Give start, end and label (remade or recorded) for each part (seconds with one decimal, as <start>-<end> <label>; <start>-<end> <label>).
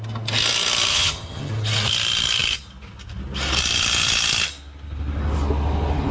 0.0-0.9 recorded; 0.9-1.5 remade; 1.5-6.1 recorded